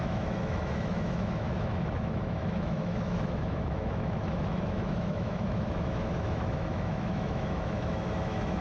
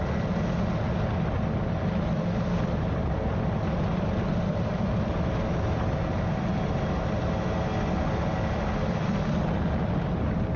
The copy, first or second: first